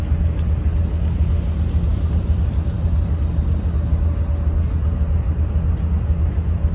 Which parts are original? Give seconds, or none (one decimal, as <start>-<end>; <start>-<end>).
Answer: 0.0-1.9; 3.1-6.7